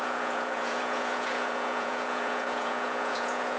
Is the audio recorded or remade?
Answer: remade